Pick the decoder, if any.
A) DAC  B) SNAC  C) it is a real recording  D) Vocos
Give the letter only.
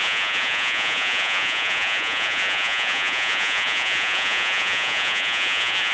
D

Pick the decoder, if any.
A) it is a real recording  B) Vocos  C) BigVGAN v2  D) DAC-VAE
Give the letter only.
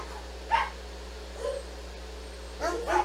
A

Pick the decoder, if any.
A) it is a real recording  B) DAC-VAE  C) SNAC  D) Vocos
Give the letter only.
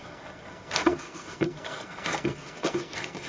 C